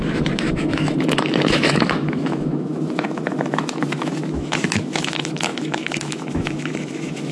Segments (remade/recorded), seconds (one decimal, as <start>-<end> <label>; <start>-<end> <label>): 0.0-7.3 remade